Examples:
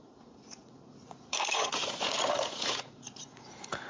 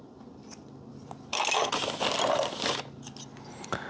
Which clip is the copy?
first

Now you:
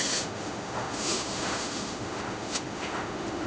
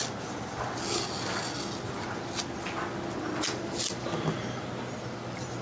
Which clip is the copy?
first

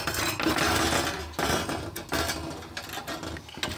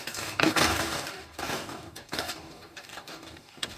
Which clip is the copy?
second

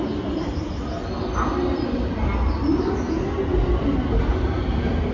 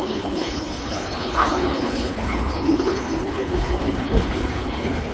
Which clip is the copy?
second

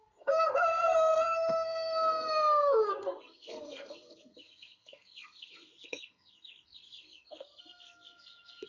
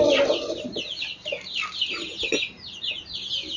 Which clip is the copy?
first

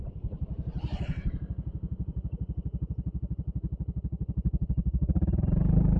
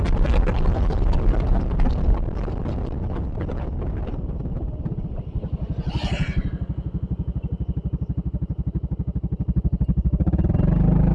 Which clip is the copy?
first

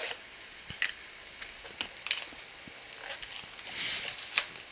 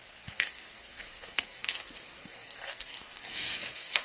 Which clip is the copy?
second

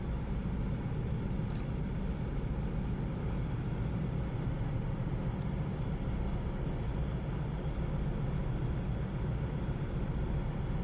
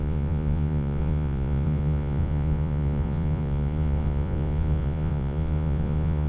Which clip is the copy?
second